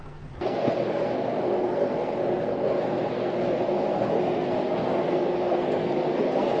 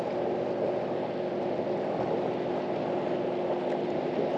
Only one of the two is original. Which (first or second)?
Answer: second